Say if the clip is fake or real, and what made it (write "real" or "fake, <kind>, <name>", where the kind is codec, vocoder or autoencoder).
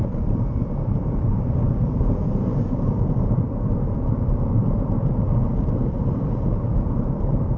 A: fake, vocoder, BigVGAN v2